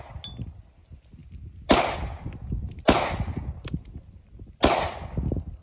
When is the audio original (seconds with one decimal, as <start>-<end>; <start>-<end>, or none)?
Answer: 0.0-5.6